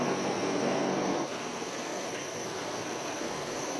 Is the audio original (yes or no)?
no